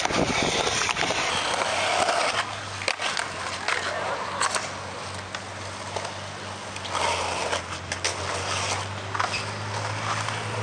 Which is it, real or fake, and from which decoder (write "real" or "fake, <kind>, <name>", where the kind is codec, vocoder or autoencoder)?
real